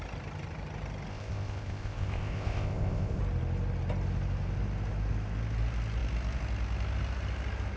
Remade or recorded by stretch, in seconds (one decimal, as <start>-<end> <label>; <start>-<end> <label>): 0.0-1.1 recorded; 1.1-3.2 remade; 3.2-7.8 recorded